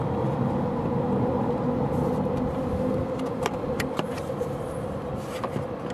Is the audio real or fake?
real